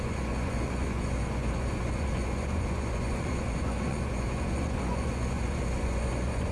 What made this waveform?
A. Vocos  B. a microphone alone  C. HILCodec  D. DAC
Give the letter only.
A